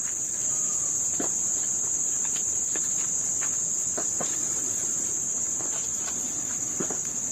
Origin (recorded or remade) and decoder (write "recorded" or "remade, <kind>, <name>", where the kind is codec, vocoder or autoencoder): recorded